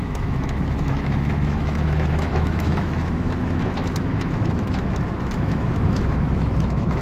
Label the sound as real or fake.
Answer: fake